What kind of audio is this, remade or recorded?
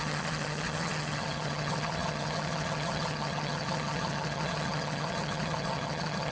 remade